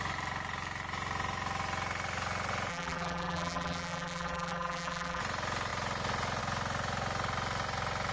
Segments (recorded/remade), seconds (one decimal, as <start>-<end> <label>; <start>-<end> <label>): 0.0-2.7 recorded; 2.7-5.2 remade; 5.2-8.1 recorded